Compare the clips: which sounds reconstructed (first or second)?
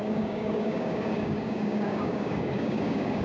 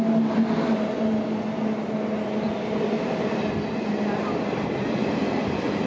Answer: first